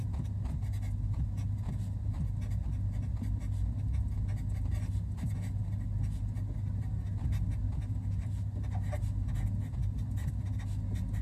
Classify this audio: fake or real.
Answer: real